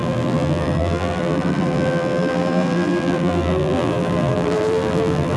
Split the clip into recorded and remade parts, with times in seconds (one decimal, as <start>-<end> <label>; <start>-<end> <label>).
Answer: 0.0-5.4 remade